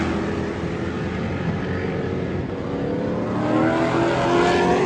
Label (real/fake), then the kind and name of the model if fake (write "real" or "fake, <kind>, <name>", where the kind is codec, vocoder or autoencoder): real